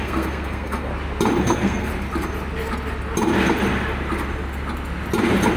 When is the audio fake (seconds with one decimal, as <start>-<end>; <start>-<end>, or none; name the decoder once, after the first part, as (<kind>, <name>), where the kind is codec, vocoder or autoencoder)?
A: 0.0-0.9 (codec, SNAC); 1.4-1.9

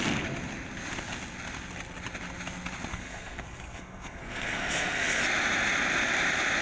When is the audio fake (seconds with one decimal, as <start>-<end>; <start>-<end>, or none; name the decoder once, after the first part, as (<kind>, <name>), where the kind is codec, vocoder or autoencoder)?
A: 2.9-5.2 (codec, SNAC)